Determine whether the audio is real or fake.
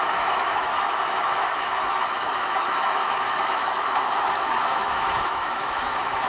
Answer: fake